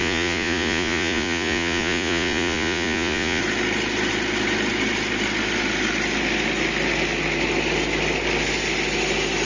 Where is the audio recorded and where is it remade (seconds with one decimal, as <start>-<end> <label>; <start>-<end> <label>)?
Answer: 0.0-3.4 remade; 3.4-9.4 recorded